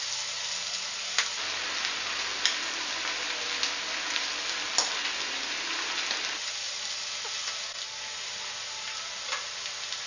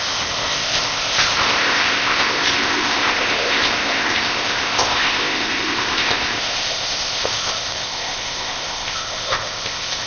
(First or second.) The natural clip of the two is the first